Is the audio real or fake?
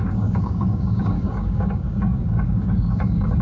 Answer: fake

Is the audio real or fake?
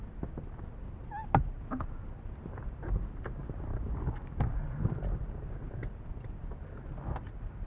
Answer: real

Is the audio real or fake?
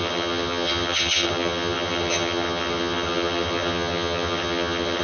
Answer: fake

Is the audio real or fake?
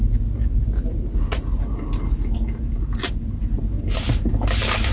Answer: real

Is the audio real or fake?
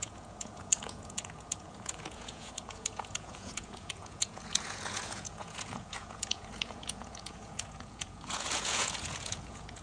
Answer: fake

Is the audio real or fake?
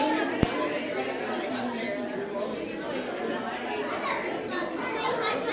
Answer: real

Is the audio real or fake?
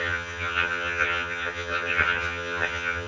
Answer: fake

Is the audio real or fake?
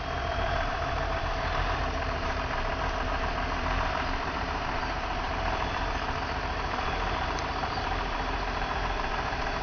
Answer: fake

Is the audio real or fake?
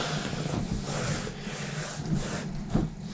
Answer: real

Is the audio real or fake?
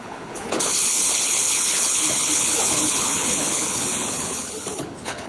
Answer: fake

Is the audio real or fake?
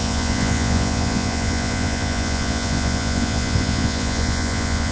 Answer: fake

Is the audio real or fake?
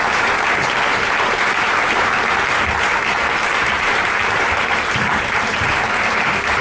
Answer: fake